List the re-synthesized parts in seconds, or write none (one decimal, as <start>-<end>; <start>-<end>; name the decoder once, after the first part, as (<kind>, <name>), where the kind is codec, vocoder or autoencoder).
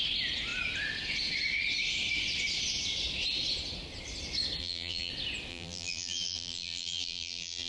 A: 4.6-5.1 (vocoder, BigVGAN v2); 5.5-7.7